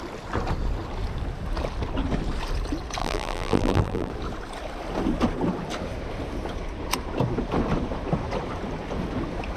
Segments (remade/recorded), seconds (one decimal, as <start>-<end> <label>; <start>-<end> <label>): 0.0-3.0 recorded; 3.0-4.1 remade; 4.1-9.6 recorded